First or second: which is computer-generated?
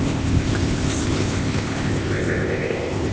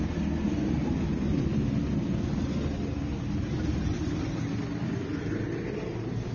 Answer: first